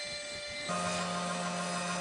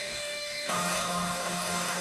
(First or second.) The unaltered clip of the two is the first